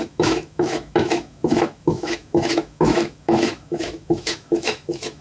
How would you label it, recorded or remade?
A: remade